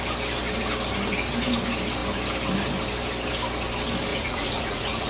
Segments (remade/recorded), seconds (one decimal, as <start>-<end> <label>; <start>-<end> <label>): 0.0-4.1 recorded; 4.1-5.1 remade